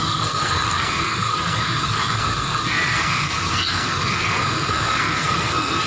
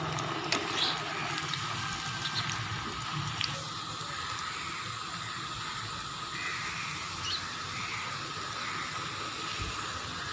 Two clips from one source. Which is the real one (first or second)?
second